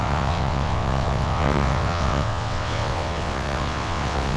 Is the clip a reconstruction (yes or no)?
yes